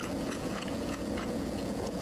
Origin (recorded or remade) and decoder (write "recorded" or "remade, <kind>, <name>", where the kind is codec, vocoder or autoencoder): remade, vocoder, Vocos